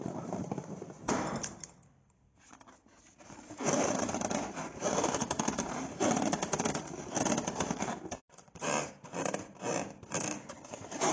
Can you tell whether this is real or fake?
fake